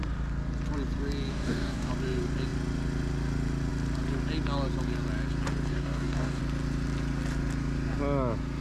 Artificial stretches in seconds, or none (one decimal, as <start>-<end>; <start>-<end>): 1.3-1.9; 5.7-6.4